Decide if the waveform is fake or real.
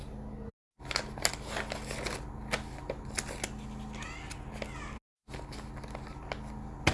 real